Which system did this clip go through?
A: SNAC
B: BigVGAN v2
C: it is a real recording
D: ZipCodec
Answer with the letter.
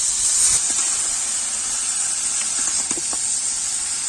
C